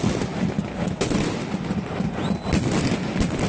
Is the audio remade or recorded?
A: recorded